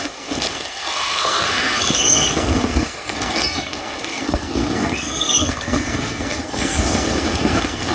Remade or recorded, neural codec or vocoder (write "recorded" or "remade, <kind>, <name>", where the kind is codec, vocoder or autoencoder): remade, codec, SNAC